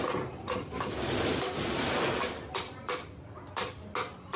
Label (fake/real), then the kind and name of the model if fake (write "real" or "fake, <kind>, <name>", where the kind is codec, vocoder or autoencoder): real